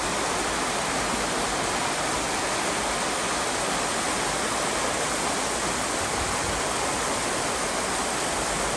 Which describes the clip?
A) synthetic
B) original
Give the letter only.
B